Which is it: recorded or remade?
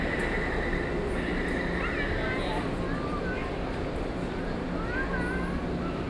recorded